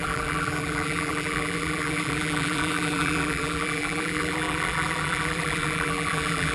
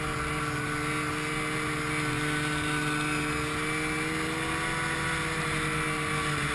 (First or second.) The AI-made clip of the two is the first